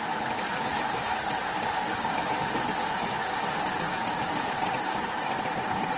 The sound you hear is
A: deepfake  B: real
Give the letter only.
B